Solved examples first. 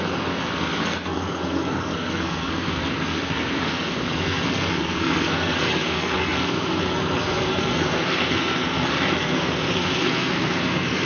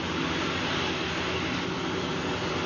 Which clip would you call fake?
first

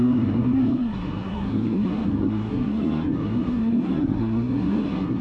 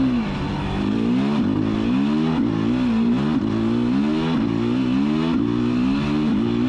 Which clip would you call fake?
first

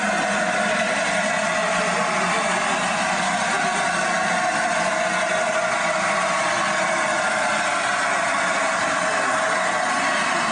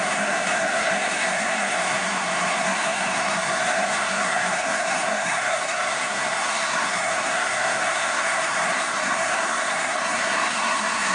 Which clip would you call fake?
second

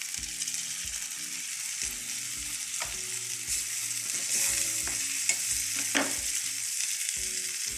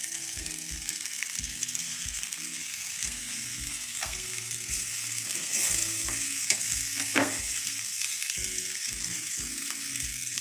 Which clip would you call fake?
second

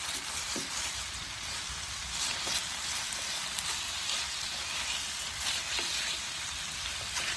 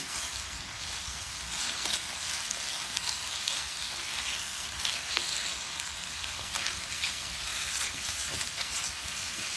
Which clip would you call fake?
second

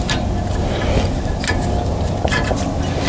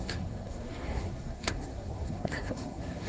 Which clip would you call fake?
second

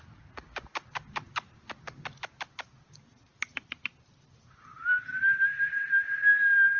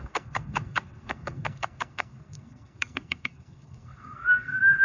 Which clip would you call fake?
second